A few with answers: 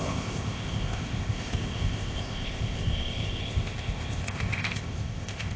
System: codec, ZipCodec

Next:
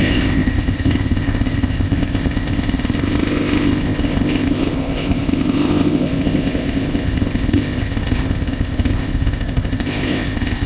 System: codec, ZipCodec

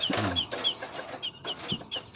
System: none